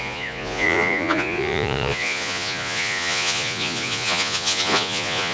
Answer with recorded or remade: remade